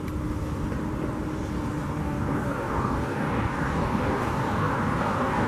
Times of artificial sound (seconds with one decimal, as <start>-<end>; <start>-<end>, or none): 2.0-5.5